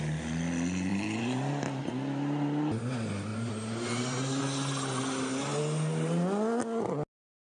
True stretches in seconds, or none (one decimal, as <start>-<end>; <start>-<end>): 0.0-0.9; 1.8-3.3; 4.4-7.6